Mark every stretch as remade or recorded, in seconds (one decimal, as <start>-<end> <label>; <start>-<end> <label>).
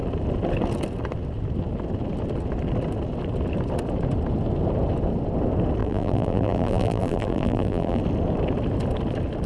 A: 0.0-5.8 recorded; 5.8-8.0 remade; 8.0-9.5 recorded